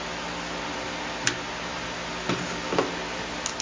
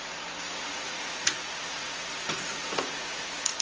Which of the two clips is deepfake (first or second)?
second